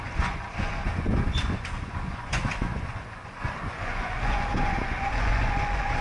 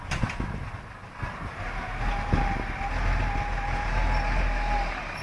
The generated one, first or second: first